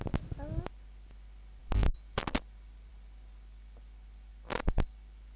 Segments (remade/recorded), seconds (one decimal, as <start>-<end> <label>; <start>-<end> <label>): 0.0-5.4 recorded